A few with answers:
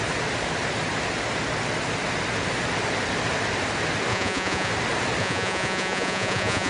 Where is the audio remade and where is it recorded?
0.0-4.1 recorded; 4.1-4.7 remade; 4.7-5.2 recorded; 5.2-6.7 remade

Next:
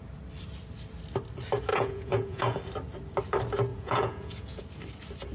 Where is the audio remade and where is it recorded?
0.0-1.7 recorded; 1.7-2.6 remade; 2.6-3.7 recorded; 3.7-4.6 remade; 4.6-5.3 recorded

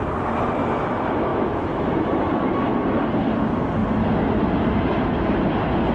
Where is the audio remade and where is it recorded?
0.0-1.3 recorded; 1.3-1.9 remade; 1.9-5.9 recorded

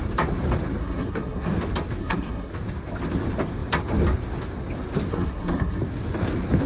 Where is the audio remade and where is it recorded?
0.0-0.8 recorded; 0.8-1.5 remade; 1.5-2.0 recorded; 2.0-2.5 remade; 2.5-5.1 recorded; 5.1-5.8 remade; 5.8-6.7 recorded